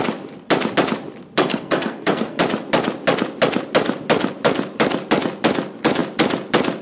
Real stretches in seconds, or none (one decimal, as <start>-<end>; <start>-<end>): 0.0-1.4; 2.4-6.8